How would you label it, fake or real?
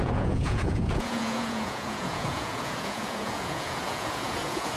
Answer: fake